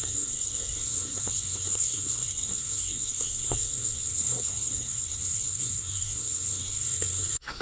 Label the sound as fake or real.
fake